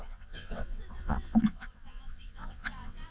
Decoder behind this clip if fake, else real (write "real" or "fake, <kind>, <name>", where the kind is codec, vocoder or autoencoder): fake, vocoder, WaveNeXt